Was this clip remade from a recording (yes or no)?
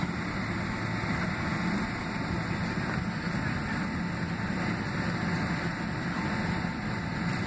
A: no